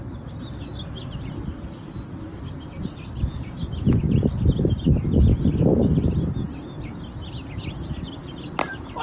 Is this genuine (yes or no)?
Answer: yes